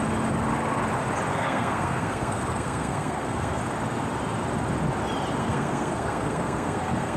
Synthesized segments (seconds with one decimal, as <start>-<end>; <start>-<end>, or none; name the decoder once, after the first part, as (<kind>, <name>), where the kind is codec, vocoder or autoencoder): 1.3-3.6 (codec, SNAC); 5.4-7.2